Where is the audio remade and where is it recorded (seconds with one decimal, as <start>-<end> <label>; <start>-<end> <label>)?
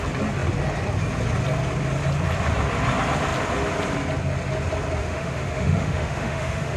0.0-5.0 recorded; 5.0-6.8 remade